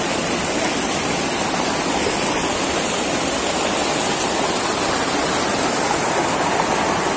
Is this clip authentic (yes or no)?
yes